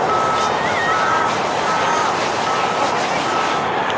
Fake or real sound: real